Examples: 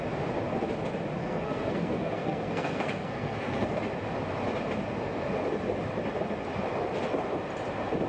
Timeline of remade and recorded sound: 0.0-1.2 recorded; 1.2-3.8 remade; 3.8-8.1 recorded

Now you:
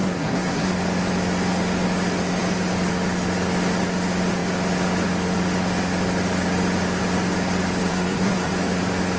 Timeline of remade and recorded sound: 0.0-0.7 remade; 0.7-7.9 recorded; 7.9-8.5 remade; 8.5-9.2 recorded